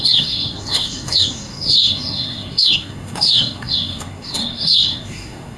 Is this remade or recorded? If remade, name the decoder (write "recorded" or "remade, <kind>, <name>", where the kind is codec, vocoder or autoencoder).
remade, codec, SNAC